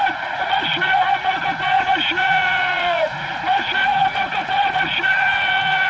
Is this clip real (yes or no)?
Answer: no